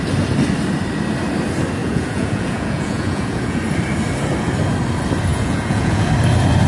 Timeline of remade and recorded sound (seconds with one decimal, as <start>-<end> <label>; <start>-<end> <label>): 0.0-1.8 recorded; 1.8-3.6 remade; 3.6-5.3 recorded; 5.3-6.1 remade; 6.1-6.7 recorded